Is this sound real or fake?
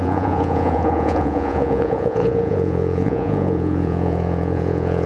fake